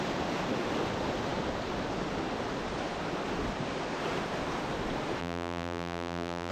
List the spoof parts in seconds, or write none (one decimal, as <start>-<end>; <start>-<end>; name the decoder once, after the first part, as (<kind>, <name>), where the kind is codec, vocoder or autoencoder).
5.2-6.5 (vocoder, BigVGAN v2)